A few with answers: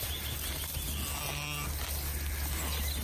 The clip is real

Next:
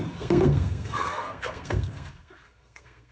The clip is fake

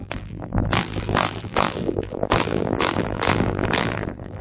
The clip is fake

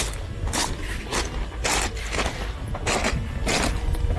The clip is real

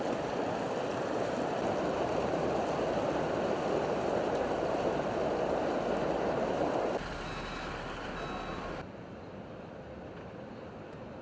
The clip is real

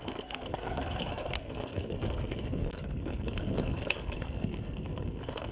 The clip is fake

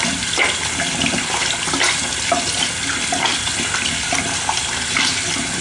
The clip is real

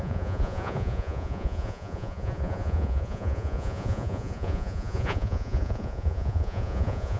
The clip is fake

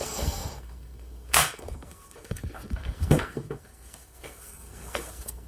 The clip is fake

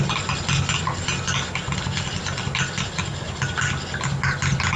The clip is real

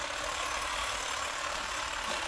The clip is fake